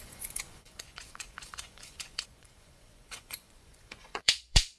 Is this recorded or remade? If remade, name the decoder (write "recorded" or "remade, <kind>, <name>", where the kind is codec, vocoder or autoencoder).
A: remade, vocoder, Vocos